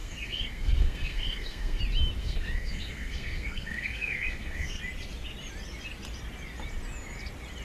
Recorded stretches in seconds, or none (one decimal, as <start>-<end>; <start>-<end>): 1.8-2.2; 4.8-7.6

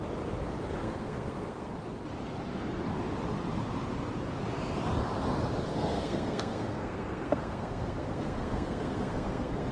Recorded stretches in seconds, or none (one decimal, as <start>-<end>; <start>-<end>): 0.0-0.8; 1.7-5.7

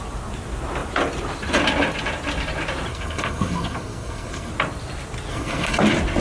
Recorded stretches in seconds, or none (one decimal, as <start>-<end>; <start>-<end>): 0.0-2.9; 4.5-5.3; 5.8-6.2

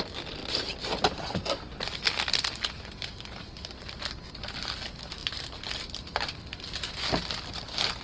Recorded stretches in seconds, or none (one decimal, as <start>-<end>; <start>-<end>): 0.0-8.0

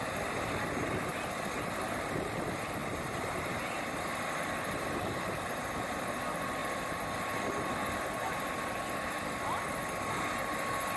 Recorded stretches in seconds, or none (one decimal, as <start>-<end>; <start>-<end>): 0.0-11.0

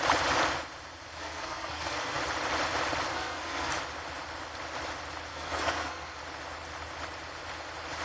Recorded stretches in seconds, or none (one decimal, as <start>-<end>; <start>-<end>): 0.0-1.2; 2.2-3.1; 3.7-5.3; 6.2-8.0